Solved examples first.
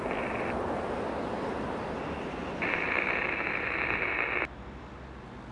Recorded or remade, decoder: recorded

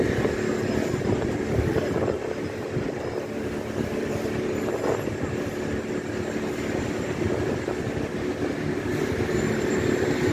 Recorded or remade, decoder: recorded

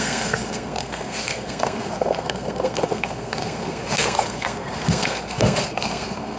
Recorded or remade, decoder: remade, codec, SNAC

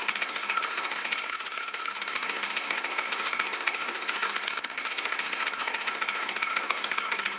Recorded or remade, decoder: remade, codec, SNAC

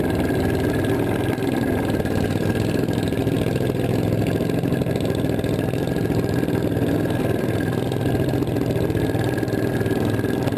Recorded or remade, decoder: recorded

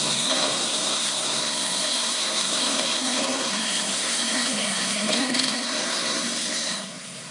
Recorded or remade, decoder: remade, codec, SNAC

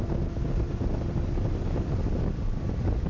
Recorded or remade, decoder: recorded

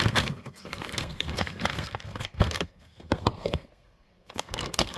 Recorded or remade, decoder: remade, codec, SNAC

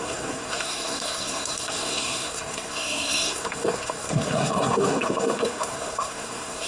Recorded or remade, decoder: remade, codec, SNAC